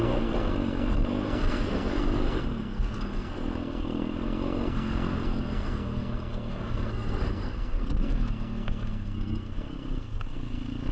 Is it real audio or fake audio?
fake